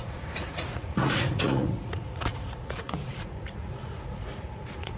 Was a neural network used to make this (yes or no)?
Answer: yes